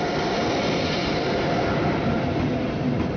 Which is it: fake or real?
real